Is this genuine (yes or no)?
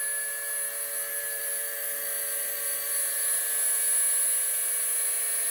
yes